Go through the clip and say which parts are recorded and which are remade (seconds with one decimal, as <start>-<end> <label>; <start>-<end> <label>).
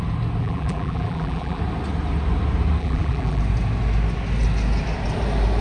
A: 0.0-0.4 recorded; 0.4-1.6 remade; 1.6-2.8 recorded; 2.8-3.4 remade; 3.4-5.6 recorded